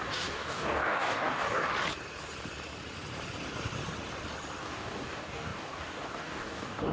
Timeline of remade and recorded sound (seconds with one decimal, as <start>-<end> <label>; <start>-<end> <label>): 0.0-1.7 remade; 1.7-4.6 recorded; 4.6-6.9 remade